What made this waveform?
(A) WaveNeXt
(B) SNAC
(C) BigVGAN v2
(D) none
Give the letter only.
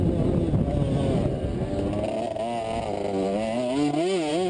D